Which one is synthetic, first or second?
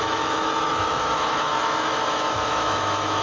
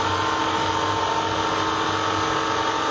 first